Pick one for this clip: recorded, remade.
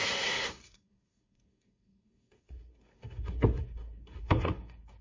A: remade